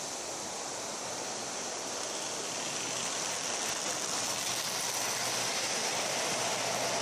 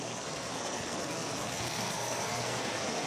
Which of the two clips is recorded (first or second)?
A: first